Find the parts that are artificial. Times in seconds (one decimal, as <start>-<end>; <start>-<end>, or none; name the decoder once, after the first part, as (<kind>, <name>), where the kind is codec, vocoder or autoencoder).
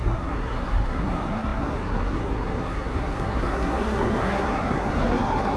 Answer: 0.0-5.6 (codec, SNAC)